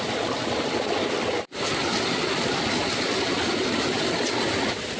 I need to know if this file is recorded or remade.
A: recorded